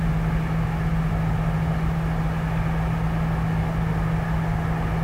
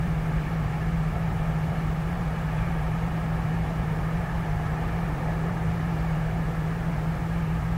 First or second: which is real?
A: first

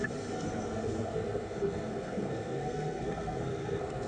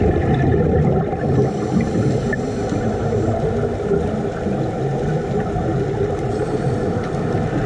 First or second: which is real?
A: second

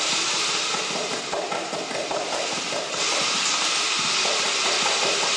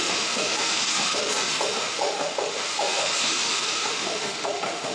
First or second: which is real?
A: first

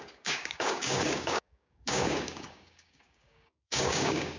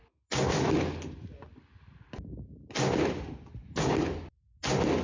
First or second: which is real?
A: second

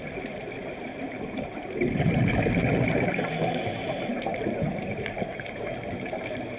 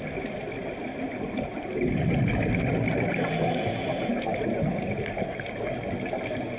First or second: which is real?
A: second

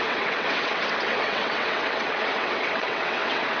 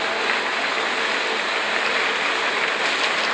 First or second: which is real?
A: second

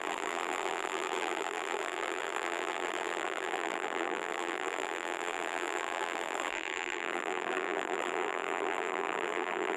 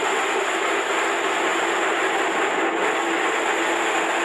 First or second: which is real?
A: second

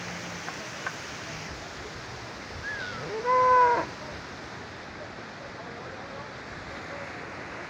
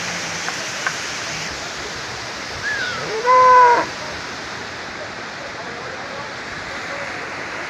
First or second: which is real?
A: first